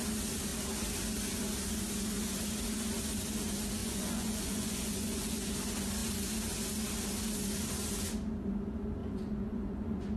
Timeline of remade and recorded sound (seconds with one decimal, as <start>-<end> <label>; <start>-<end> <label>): 0.0-3.8 recorded; 3.8-5.5 remade; 5.5-9.0 recorded; 9.0-10.2 remade